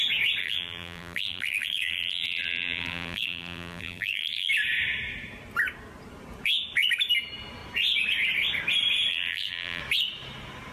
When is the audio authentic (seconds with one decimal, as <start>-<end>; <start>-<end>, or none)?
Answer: 0.0-0.4; 4.5-9.1; 9.8-10.7